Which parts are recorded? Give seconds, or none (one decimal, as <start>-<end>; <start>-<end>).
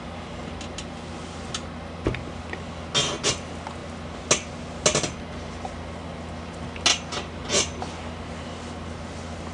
0.0-9.5